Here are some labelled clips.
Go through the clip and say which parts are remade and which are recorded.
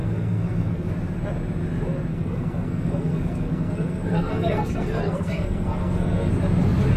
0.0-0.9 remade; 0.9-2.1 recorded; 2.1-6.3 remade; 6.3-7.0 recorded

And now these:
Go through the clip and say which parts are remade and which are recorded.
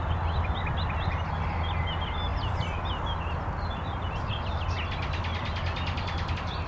0.0-6.7 recorded